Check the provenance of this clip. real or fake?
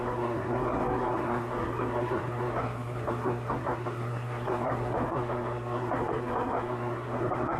fake